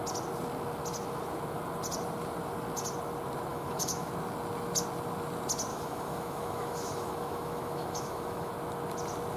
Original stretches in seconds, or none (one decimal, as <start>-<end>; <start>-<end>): 0.0-3.5; 4.1-5.7; 8.5-9.4